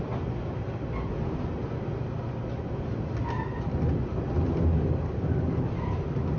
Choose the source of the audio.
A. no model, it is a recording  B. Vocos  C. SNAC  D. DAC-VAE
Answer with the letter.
A